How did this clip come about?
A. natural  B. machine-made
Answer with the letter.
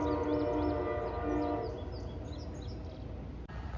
A